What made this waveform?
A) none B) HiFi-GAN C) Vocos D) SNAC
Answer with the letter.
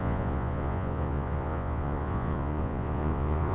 C